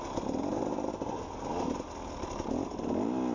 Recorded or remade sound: recorded